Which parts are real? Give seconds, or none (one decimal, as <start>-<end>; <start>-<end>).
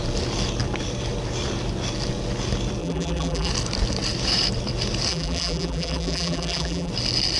0.0-2.8; 3.5-5.1; 6.9-7.4